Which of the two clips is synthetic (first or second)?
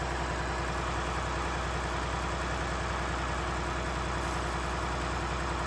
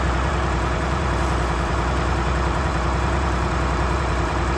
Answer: second